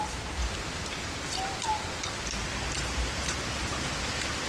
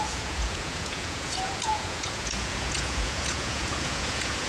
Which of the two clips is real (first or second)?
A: first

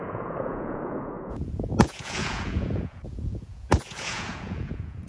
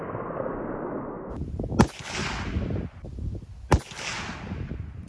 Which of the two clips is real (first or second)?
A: second